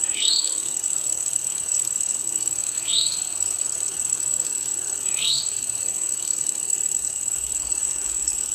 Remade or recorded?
remade